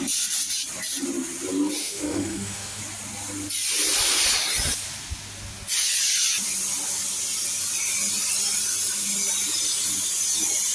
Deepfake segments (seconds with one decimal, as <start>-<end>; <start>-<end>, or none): 1.8-2.8